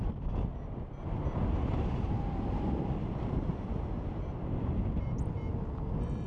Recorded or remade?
recorded